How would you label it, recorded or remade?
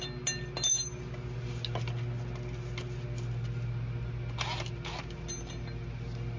recorded